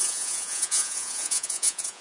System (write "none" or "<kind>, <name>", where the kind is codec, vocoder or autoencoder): vocoder, Vocos